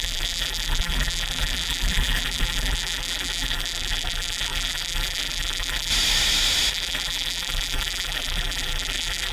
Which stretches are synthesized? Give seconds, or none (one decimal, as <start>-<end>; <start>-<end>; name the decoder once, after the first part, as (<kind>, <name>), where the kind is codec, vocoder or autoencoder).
0.0-5.9 (vocoder, BigVGAN v2); 6.7-9.3